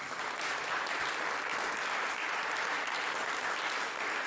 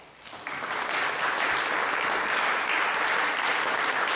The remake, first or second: first